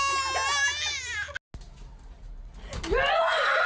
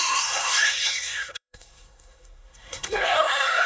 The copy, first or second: second